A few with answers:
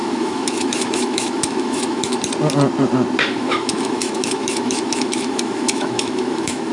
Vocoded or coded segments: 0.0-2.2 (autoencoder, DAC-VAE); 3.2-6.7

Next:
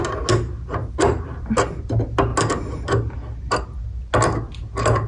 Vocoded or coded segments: none